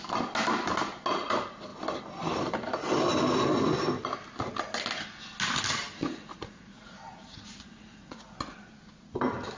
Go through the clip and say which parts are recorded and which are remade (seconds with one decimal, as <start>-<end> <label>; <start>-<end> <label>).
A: 0.0-6.0 recorded; 6.0-8.7 remade; 8.7-9.6 recorded